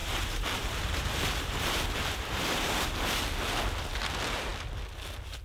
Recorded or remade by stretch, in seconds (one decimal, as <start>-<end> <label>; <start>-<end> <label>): 0.0-3.2 remade; 3.2-5.4 recorded

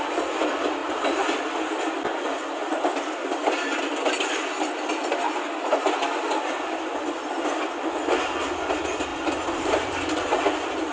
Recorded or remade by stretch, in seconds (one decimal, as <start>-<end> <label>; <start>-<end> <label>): 0.0-4.5 remade; 4.5-8.7 recorded; 8.7-9.1 remade; 9.1-9.6 recorded; 9.6-10.9 remade